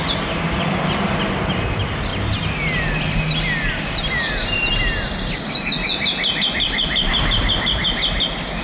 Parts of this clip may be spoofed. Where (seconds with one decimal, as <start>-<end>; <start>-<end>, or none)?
none